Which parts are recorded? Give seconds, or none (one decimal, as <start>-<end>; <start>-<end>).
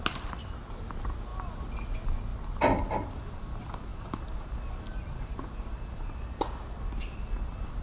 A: 0.0-7.8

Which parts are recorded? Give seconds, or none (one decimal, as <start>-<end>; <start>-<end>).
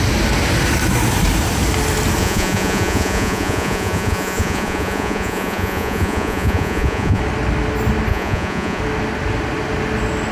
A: 0.0-2.2; 7.2-8.1; 8.8-10.3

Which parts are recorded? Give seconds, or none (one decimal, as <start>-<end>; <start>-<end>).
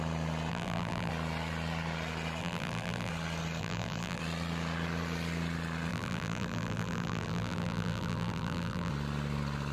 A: 0.0-0.5; 1.1-2.4; 3.1-3.6; 4.2-5.9; 8.9-9.7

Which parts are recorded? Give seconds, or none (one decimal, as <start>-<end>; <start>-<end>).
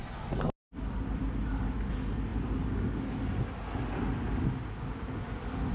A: 0.0-5.7